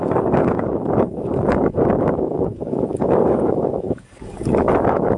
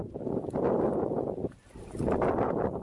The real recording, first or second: second